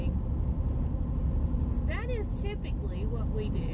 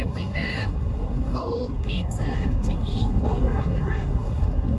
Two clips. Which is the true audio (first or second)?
first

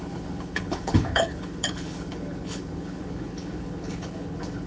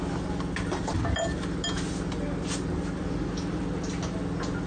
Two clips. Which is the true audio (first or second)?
second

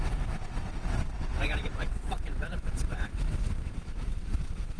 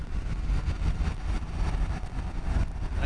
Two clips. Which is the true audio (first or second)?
second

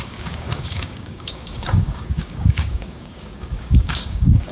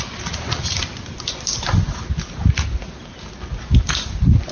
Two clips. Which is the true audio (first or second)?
second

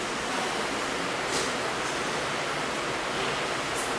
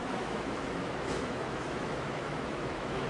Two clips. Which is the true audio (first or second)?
first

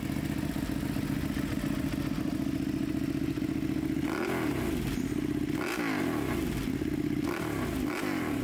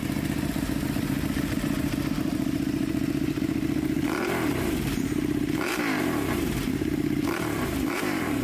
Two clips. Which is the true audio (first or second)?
first